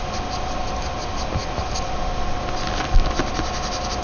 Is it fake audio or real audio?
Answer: real